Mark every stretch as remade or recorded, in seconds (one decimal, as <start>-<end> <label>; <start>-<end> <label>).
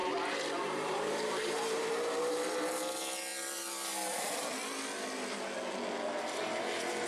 0.0-1.9 remade; 1.9-7.1 recorded